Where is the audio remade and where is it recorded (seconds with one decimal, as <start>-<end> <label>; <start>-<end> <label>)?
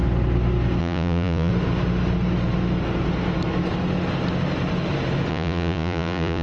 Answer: 0.0-0.8 recorded; 0.8-1.5 remade; 1.5-5.3 recorded; 5.3-6.4 remade